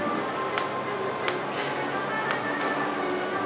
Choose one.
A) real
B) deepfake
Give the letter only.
A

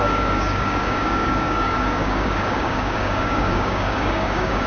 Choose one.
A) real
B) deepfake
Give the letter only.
B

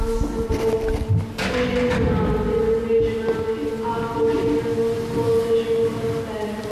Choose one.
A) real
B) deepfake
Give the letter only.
A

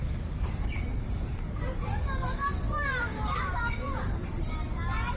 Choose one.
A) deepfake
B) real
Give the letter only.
A